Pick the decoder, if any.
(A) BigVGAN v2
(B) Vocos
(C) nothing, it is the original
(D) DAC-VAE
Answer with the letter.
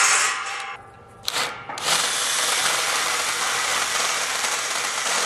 C